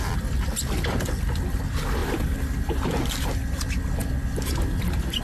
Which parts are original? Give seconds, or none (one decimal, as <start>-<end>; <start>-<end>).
0.0-5.2